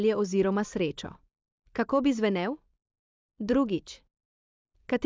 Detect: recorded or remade recorded